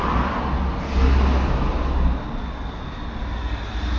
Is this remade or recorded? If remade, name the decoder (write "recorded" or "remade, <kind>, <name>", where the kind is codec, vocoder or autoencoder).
recorded